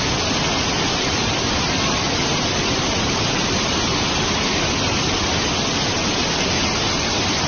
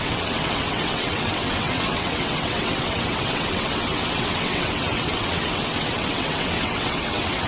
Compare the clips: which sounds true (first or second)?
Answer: first